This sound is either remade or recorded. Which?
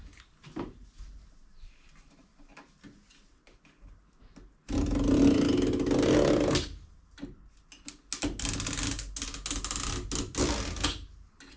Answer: recorded